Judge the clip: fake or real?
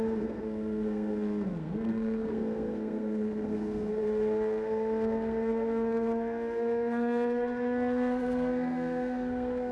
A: fake